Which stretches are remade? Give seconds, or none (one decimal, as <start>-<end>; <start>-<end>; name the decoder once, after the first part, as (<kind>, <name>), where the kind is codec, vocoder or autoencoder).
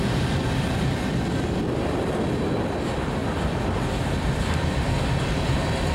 3.2-5.0 (vocoder, BigVGAN v2)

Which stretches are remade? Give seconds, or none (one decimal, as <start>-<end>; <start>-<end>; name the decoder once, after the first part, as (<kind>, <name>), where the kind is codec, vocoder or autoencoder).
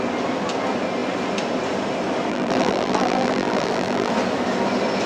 2.3-4.1 (vocoder, BigVGAN v2)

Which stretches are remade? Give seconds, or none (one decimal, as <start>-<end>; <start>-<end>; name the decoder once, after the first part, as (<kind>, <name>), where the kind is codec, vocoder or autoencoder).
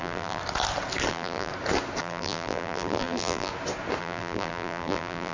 0.0-0.4 (vocoder, BigVGAN v2); 1.1-1.5; 2.0-3.5; 4.0-5.3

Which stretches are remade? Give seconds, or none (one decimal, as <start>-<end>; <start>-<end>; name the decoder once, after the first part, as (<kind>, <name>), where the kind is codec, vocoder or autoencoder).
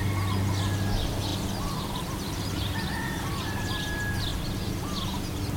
1.3-2.7 (vocoder, BigVGAN v2)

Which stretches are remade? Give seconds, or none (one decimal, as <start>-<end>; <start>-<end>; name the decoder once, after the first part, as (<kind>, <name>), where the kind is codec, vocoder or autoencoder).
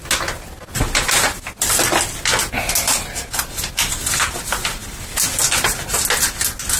none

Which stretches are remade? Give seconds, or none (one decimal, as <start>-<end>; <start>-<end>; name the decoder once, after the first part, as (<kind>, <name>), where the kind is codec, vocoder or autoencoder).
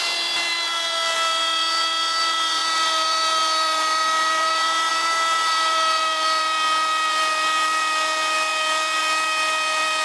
0.0-10.0 (vocoder, BigVGAN v2)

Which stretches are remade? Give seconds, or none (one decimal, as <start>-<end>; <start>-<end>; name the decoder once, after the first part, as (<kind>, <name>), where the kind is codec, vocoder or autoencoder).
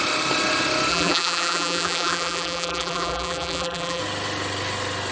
0.9-4.0 (vocoder, BigVGAN v2)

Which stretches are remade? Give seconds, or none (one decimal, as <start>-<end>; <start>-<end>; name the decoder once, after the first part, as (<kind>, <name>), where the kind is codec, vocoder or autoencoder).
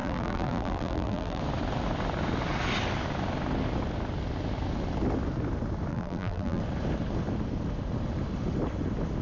0.0-1.4 (vocoder, BigVGAN v2); 5.9-6.6